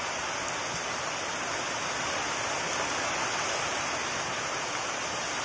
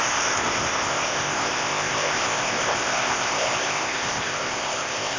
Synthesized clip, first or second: second